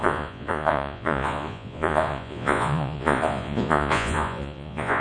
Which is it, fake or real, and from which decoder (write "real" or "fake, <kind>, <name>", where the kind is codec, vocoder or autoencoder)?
fake, vocoder, Vocos